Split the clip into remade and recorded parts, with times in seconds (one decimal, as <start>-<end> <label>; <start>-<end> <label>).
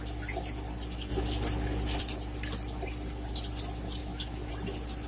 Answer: 0.0-4.0 recorded; 4.0-4.5 remade; 4.5-5.1 recorded